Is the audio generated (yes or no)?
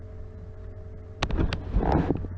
no